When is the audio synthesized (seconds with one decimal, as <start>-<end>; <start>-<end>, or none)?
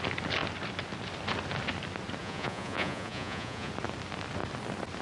2.2-3.7